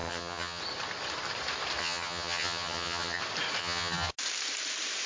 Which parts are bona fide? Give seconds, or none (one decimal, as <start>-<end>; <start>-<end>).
0.6-1.8; 3.2-3.6; 4.1-5.1